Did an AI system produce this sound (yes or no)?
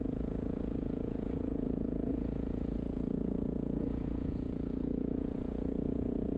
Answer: yes